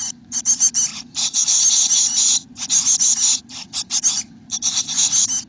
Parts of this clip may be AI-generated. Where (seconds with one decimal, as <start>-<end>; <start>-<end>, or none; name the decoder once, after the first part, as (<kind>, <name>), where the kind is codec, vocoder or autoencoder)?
none